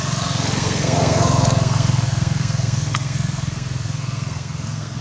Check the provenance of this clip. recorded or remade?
remade